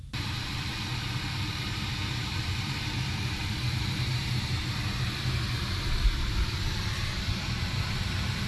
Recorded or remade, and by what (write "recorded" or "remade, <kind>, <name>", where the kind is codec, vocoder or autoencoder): remade, vocoder, BigVGAN v2